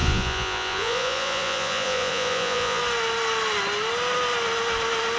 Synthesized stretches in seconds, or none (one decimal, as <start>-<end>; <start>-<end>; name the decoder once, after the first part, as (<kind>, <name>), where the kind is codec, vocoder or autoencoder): 0.0-2.8 (vocoder, Vocos)

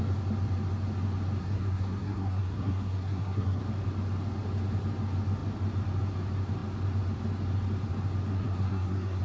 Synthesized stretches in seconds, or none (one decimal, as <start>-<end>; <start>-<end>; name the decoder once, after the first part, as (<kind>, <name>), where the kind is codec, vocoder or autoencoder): 1.4-3.6 (codec, SNAC); 8.3-9.2